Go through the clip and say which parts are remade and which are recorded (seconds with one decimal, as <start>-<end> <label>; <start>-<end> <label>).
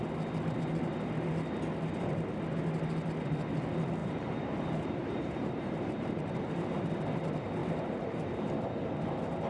0.0-4.0 recorded; 4.0-6.9 remade; 6.9-7.6 recorded; 7.6-8.3 remade; 8.3-9.5 recorded